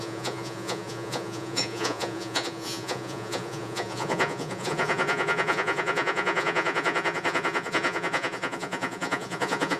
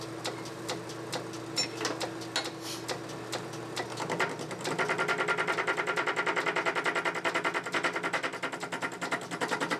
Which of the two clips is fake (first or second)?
first